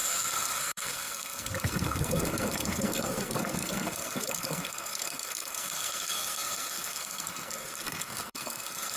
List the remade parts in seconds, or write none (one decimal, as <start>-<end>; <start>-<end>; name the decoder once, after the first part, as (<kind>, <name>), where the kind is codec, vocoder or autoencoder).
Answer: 0.0-9.0 (codec, SNAC)